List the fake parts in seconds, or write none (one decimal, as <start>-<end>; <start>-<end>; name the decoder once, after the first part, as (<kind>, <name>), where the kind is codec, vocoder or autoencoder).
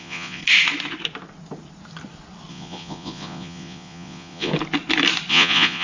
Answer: 0.0-0.4 (vocoder, Vocos); 2.5-4.5; 5.3-5.8